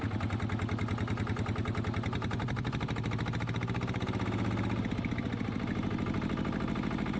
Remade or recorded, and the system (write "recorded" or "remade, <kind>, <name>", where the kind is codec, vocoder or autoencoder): recorded